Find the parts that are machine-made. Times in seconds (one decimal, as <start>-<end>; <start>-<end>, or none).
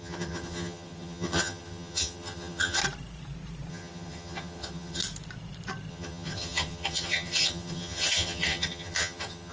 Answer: 0.0-2.8; 3.7-5.0; 5.9-9.5